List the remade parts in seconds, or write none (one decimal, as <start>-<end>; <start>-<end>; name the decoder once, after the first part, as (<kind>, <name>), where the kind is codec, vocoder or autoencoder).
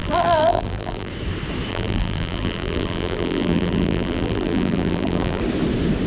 0.0-1.1 (vocoder, BigVGAN v2); 1.7-5.4